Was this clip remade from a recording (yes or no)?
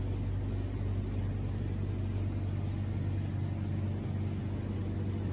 no